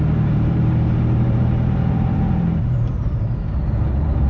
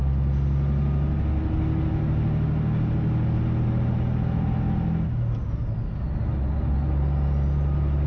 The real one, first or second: second